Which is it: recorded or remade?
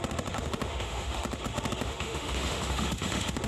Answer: remade